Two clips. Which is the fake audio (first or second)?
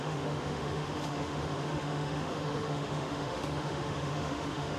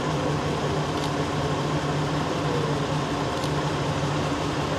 first